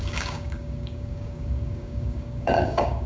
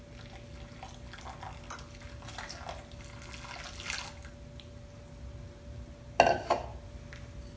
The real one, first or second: second